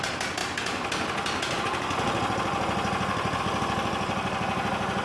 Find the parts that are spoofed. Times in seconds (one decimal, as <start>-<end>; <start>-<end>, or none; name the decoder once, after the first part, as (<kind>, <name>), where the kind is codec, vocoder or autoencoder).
none